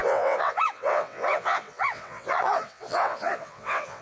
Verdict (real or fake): fake